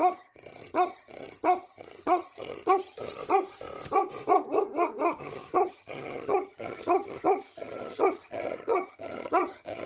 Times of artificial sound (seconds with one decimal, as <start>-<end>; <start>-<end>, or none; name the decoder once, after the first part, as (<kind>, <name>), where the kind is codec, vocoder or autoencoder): 0.0-3.2 (vocoder, HiFi-GAN); 5.2-9.9